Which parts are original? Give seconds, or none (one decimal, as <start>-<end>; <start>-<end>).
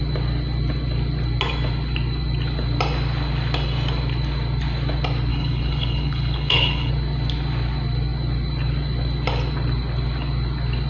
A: 0.0-5.3; 6.9-10.9